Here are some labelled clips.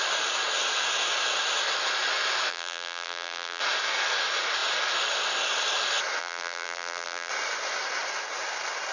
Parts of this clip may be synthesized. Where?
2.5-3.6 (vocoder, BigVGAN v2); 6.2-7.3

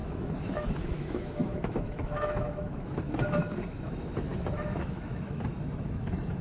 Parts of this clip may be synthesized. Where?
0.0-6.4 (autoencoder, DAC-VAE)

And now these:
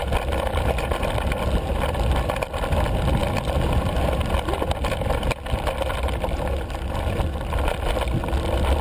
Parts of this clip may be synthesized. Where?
none